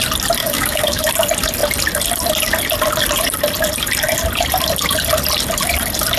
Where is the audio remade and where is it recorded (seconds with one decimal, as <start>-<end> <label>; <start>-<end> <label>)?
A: 0.0-0.4 recorded; 0.4-1.0 remade; 1.0-6.2 recorded